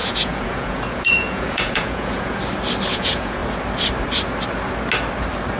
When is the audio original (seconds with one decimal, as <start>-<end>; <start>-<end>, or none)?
2.4-2.9; 3.4-5.6